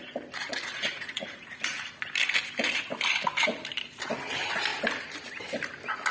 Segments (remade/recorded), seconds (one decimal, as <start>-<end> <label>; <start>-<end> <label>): 0.0-0.5 recorded; 0.5-2.0 remade; 2.0-6.1 recorded

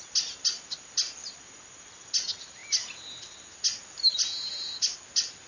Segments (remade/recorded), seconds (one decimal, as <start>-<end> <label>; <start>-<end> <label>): 0.0-5.5 recorded

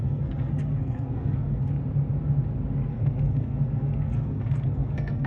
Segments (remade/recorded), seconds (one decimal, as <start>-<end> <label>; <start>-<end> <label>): 0.0-1.7 remade; 1.7-2.9 recorded; 2.9-5.3 remade